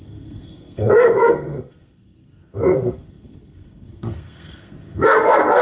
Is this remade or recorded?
remade